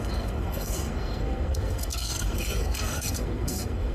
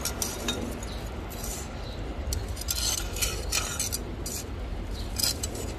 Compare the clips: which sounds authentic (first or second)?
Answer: second